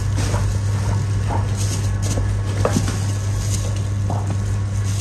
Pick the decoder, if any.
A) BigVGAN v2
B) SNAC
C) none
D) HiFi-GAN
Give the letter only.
C